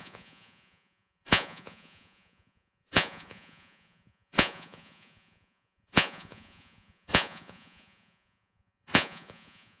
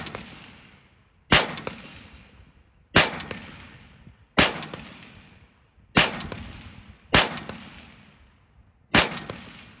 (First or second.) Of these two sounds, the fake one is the first